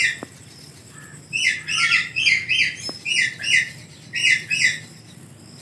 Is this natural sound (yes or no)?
yes